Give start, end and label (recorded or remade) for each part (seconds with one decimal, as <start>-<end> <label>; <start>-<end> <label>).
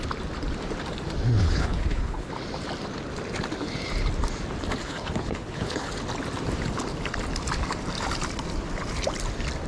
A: 0.0-1.4 recorded; 1.4-2.3 remade; 2.3-4.8 recorded; 4.8-5.9 remade; 5.9-9.7 recorded